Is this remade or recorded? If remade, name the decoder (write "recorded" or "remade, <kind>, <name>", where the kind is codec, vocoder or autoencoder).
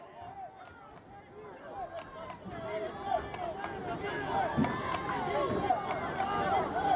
recorded